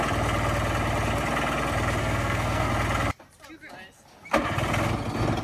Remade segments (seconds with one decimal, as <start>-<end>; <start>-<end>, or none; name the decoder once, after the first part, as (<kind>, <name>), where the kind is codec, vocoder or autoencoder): 2.0-2.7 (codec, SNAC)